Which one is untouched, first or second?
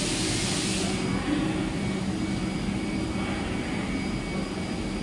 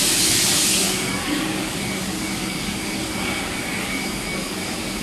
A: first